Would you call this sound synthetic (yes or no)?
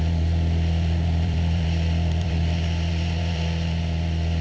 yes